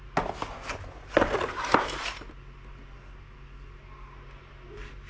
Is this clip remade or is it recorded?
recorded